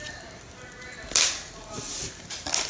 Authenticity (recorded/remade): recorded